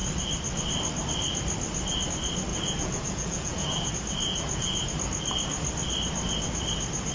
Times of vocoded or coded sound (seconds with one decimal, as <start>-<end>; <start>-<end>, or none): 2.5-3.9; 4.3-4.9